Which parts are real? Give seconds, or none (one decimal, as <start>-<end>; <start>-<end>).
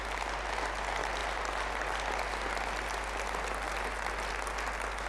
0.0-5.1